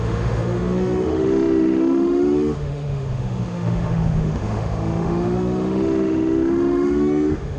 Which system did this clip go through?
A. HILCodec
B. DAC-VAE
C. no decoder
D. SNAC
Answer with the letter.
B